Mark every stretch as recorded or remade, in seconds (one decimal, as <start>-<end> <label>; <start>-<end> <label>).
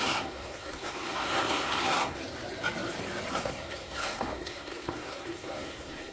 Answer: 0.0-2.2 remade; 2.2-3.3 recorded; 3.3-6.1 remade